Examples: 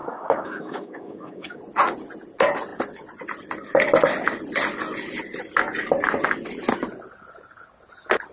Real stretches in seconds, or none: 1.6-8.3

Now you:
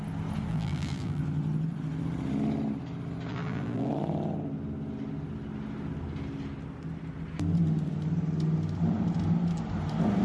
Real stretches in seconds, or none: 0.0-0.5; 1.2-3.3; 3.9-10.2

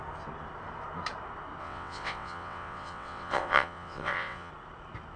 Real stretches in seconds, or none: 0.0-1.6; 4.5-5.2

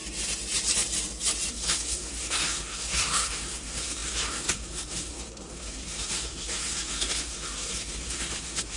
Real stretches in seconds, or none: 0.0-1.5

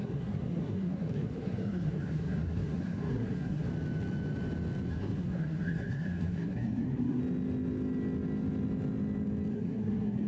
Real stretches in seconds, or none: 3.7-4.9; 7.2-9.5

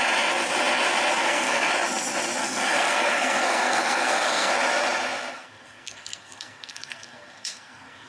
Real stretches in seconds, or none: 0.0-1.2; 1.7-2.4; 4.5-5.3